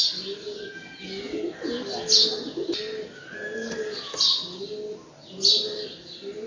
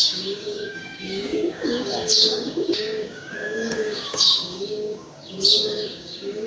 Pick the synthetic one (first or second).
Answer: second